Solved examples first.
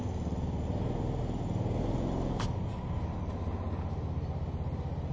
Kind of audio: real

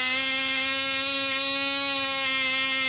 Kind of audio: real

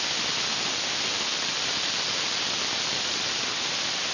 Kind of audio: real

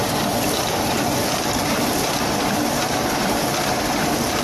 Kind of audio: fake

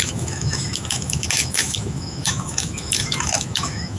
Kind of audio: fake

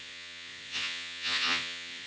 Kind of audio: fake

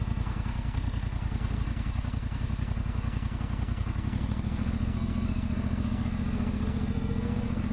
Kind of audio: fake